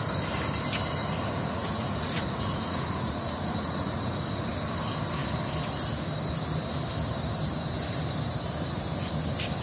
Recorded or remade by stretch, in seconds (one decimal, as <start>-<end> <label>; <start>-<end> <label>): 0.0-1.0 recorded; 1.0-4.5 remade; 4.5-9.6 recorded